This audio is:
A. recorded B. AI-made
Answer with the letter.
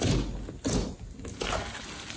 A